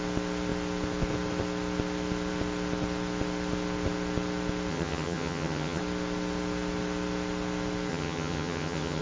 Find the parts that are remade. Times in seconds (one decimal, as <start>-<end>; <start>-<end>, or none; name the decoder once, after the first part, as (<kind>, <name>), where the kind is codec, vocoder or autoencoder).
4.7-5.8 (vocoder, HiFi-GAN); 7.9-9.0